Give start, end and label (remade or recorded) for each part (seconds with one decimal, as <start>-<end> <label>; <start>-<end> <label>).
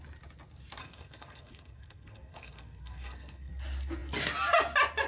0.0-0.8 recorded; 0.8-3.5 remade; 3.5-5.1 recorded